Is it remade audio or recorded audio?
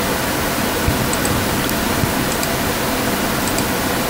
recorded